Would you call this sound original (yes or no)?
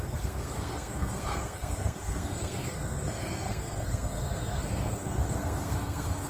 no